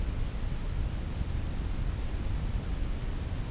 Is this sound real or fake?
real